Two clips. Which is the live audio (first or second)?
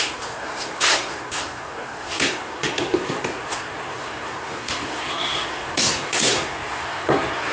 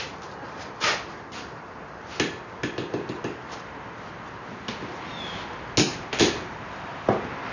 second